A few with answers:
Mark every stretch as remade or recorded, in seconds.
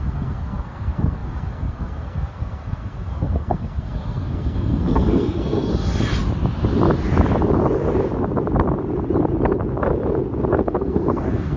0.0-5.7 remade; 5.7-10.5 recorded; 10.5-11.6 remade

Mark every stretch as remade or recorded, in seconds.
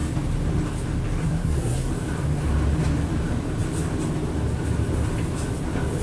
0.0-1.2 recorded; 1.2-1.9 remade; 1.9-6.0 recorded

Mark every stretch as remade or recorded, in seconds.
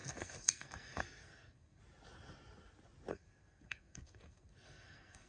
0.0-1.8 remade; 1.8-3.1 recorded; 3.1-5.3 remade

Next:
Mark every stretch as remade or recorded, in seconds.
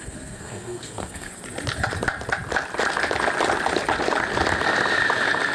0.0-1.3 remade; 1.3-5.5 recorded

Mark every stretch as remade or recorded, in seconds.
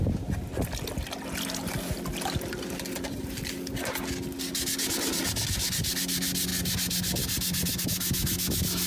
0.0-8.9 recorded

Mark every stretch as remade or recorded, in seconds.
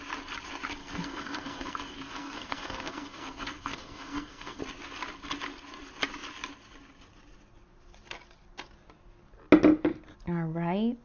0.0-0.8 recorded; 0.8-4.6 remade; 4.6-11.0 recorded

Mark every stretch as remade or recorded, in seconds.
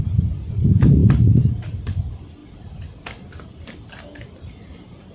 0.0-5.1 recorded